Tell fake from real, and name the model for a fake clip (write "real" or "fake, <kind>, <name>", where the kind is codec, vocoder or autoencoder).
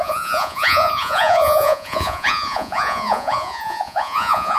fake, vocoder, Vocos